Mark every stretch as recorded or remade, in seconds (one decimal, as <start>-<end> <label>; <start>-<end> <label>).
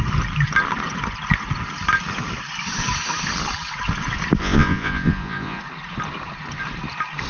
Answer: 0.0-4.4 recorded; 4.4-5.6 remade; 5.6-7.3 recorded